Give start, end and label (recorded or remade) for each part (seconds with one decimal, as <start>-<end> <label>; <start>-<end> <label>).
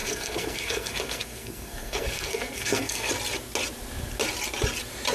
0.0-3.1 remade; 3.1-5.1 recorded